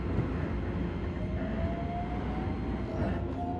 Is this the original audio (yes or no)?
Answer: yes